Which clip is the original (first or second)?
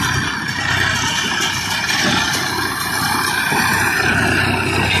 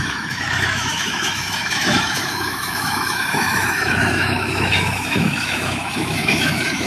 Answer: first